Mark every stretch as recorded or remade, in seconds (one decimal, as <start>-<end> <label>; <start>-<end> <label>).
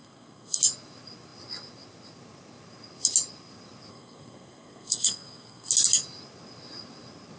0.0-0.6 remade; 0.6-3.9 recorded; 3.9-5.7 remade; 5.7-7.4 recorded